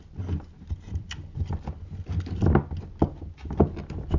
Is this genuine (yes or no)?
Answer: yes